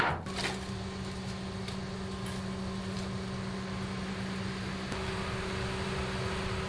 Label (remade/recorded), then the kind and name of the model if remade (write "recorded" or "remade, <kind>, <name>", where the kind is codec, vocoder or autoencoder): recorded